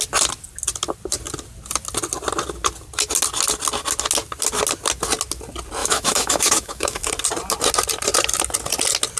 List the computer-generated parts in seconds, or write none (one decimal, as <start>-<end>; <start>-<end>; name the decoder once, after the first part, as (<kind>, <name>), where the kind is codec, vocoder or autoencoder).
5.8-7.1 (autoencoder, DAC-VAE)